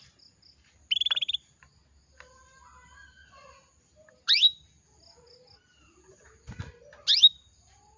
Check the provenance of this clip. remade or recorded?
recorded